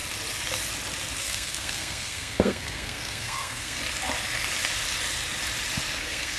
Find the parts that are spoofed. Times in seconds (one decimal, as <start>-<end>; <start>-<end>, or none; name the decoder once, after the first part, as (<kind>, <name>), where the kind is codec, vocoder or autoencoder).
1.2-3.8 (codec, SNAC); 6.0-6.4